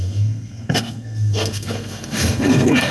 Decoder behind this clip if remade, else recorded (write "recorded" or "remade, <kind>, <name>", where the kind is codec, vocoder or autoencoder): remade, codec, SNAC